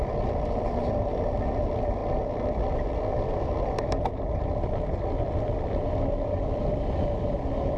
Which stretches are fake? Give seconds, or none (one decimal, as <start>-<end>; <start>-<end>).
none